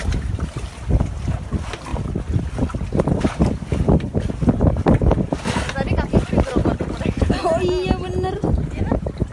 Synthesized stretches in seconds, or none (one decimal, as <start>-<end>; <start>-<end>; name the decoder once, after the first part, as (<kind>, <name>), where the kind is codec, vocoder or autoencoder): none